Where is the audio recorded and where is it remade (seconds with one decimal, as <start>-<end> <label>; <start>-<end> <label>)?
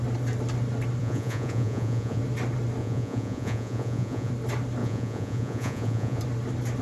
0.0-1.0 recorded; 1.0-2.2 remade; 2.2-2.8 recorded; 2.8-4.3 remade; 4.3-4.8 recorded; 4.8-6.2 remade; 6.2-6.8 recorded